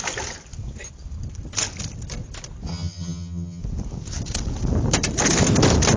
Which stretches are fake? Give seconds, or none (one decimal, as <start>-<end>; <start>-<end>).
2.7-3.6